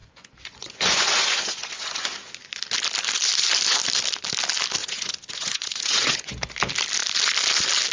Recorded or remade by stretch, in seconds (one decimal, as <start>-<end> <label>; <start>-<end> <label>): 0.0-2.3 remade; 2.3-4.8 recorded; 4.8-6.5 remade; 6.5-7.9 recorded